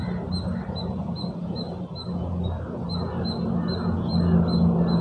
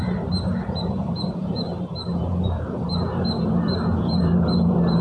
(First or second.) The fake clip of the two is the second